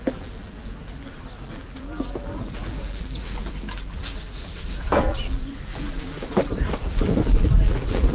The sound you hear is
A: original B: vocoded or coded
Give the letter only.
B